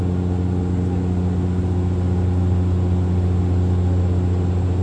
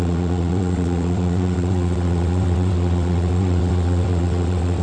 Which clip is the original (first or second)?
first